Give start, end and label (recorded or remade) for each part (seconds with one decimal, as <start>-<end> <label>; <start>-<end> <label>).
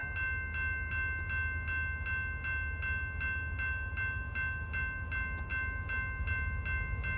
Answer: 0.0-7.2 recorded